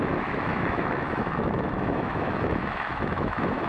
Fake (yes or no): yes